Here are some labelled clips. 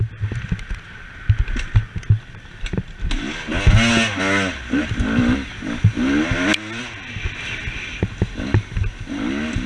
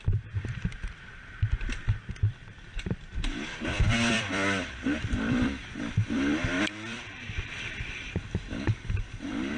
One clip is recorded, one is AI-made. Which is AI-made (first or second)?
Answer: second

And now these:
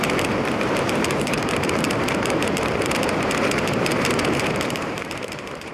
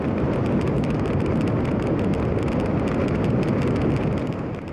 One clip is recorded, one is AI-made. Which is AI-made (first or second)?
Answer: first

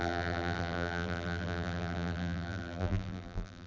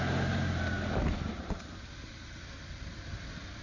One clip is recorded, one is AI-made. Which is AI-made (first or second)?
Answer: first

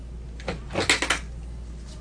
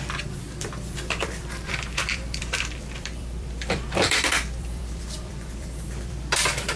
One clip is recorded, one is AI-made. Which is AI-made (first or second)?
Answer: second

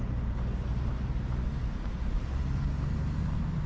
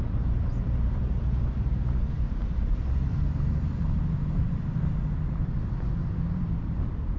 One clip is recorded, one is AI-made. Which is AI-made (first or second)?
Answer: second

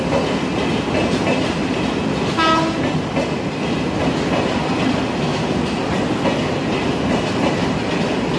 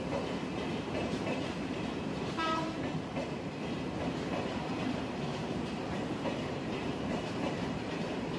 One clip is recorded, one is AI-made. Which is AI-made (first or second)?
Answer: second